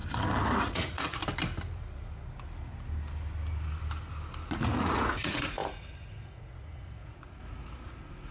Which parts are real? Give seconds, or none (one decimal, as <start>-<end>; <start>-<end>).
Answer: 0.0-0.6; 1.2-4.5